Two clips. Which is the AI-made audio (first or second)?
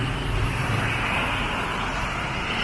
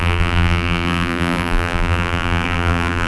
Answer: second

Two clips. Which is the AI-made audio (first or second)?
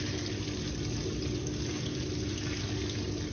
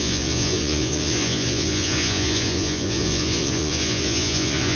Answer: second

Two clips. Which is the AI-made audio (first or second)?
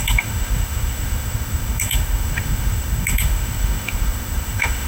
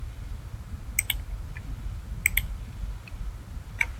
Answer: first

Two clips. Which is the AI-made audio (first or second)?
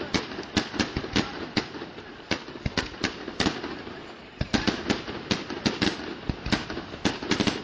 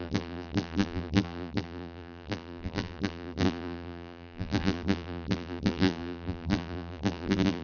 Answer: second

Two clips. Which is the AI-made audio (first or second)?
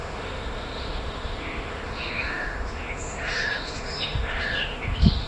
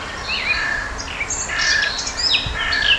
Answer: first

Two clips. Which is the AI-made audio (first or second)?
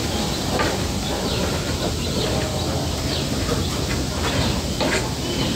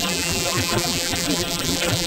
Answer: second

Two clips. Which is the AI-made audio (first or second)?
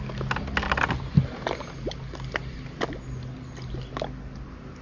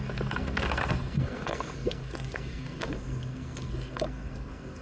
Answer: second